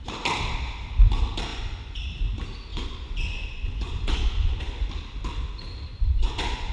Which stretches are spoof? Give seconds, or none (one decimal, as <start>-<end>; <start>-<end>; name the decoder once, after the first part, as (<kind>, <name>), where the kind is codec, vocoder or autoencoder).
1.5-2.1 (vocoder, Vocos); 2.7-4.9; 5.9-6.7